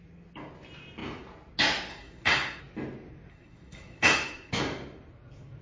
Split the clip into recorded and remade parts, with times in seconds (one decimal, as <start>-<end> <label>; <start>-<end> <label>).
0.0-1.9 recorded; 1.9-2.6 remade; 2.6-3.3 recorded; 3.3-4.5 remade; 4.5-5.6 recorded